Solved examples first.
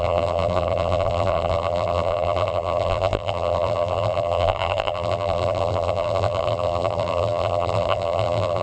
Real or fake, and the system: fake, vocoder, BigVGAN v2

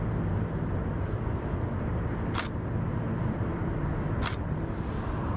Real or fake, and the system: real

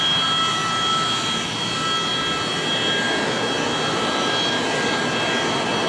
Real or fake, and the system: real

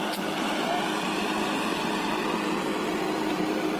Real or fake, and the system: real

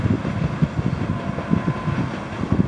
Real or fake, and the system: real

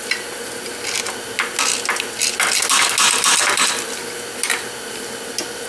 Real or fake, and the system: real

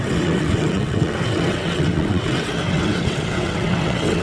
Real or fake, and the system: fake, vocoder, WaveNeXt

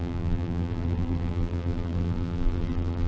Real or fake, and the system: fake, vocoder, BigVGAN v2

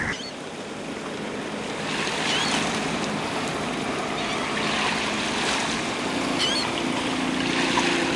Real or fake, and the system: real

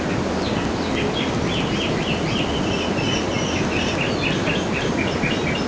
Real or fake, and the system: real